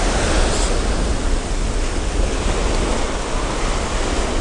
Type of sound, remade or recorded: recorded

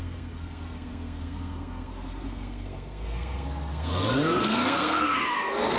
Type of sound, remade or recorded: remade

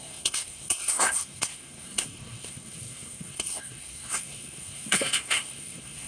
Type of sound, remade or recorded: remade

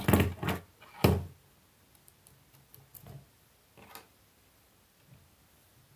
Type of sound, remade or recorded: recorded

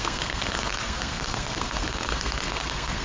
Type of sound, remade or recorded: remade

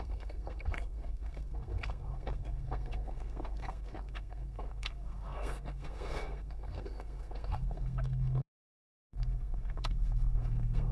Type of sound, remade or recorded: remade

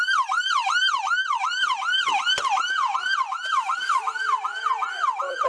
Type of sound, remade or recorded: recorded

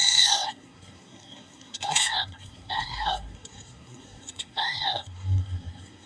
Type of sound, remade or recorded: remade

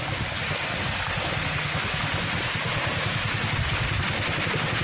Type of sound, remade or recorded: recorded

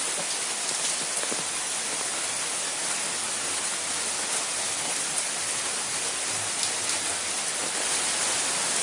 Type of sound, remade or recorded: recorded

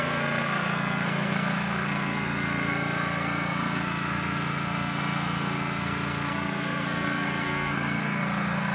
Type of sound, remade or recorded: remade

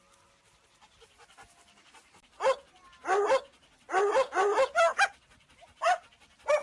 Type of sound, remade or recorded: recorded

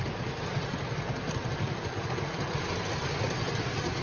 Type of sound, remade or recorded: recorded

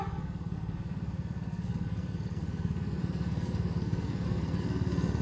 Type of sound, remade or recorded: remade